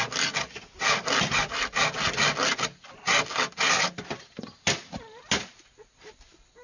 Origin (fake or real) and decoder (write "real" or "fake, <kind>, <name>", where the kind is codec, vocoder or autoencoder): real